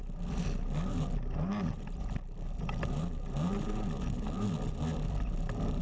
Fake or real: real